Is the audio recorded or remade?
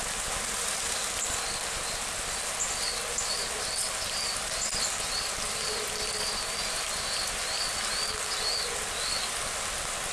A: recorded